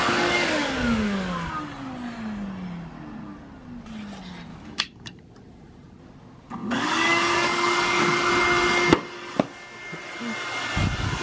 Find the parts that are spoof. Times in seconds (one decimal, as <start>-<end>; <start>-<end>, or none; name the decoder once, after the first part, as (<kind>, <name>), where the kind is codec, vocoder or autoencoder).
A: 0.0-1.5 (codec, DAC); 4.5-5.2; 6.6-8.3